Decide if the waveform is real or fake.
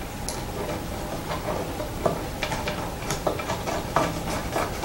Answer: real